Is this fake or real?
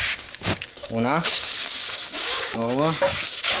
fake